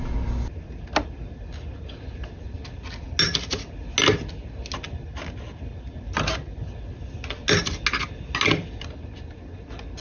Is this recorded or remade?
recorded